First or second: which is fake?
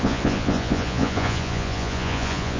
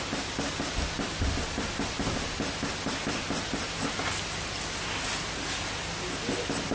first